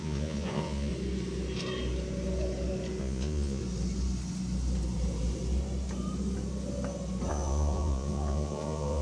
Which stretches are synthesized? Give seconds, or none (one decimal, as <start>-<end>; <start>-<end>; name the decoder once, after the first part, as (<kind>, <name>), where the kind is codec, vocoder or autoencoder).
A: 0.0-0.9 (vocoder, Vocos); 3.0-3.6; 7.3-9.0